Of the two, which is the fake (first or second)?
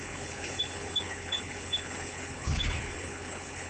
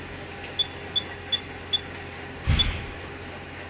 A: first